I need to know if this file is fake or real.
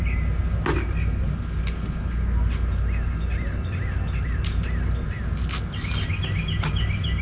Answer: real